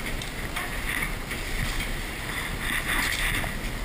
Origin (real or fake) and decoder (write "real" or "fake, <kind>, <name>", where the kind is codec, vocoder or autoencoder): real